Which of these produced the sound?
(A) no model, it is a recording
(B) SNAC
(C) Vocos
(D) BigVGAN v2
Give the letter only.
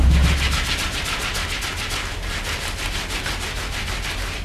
A